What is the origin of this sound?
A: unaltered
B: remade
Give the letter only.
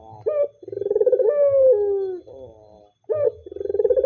A